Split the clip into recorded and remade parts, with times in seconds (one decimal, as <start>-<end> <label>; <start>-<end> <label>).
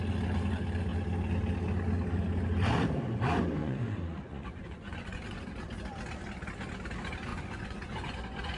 0.0-3.6 recorded; 3.6-5.4 remade; 5.4-7.3 recorded; 7.3-8.6 remade